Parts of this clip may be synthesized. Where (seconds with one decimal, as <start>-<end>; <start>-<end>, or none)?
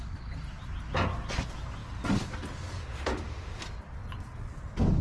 2.8-3.6